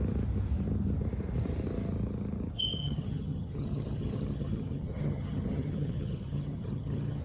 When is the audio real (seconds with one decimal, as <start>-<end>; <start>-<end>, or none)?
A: 0.0-2.8